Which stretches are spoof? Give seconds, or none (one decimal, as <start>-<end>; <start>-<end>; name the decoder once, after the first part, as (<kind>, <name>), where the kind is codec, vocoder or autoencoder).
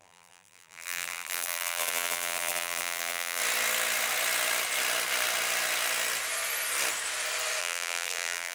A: 0.0-3.4 (vocoder, BigVGAN v2); 7.6-8.5